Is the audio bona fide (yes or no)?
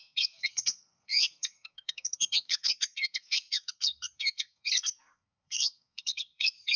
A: no